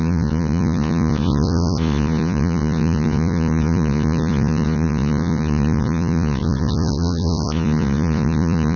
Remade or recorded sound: remade